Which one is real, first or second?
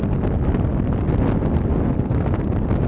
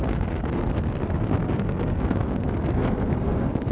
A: first